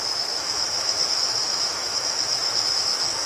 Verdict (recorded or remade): remade